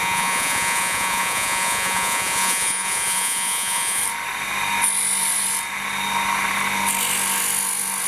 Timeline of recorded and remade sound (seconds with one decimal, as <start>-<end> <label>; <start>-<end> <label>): 0.0-4.0 remade; 4.0-8.1 recorded

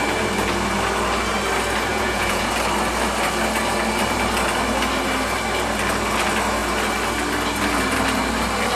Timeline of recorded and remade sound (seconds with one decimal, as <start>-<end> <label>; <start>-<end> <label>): 0.0-1.9 recorded; 1.9-2.5 remade; 2.5-8.8 recorded

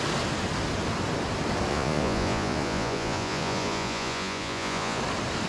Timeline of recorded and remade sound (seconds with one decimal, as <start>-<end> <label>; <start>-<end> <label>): 0.0-1.7 recorded; 1.7-5.0 remade; 5.0-5.5 recorded